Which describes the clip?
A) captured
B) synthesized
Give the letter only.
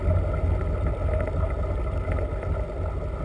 A